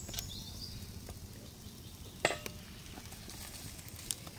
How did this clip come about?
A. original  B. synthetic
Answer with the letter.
A